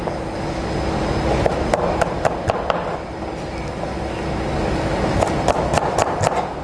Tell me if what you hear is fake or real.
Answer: real